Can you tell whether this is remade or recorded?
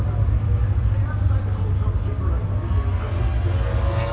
recorded